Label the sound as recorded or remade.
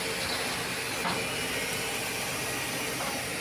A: recorded